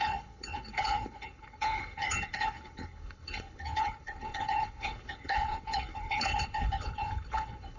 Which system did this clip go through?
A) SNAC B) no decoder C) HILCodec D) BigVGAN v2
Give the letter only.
C